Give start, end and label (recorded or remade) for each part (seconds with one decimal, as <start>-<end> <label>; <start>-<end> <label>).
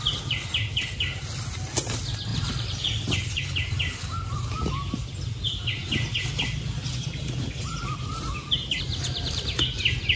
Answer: 0.0-2.3 recorded; 2.3-3.4 remade; 3.4-10.2 recorded